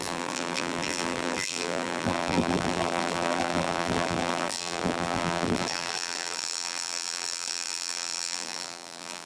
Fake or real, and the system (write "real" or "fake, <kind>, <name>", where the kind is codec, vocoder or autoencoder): fake, vocoder, BigVGAN v2